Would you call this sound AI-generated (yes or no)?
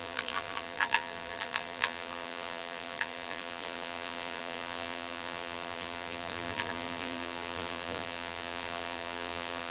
yes